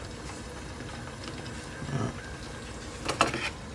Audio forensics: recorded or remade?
recorded